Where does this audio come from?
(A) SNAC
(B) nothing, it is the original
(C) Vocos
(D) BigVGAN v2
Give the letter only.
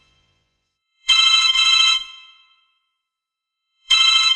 C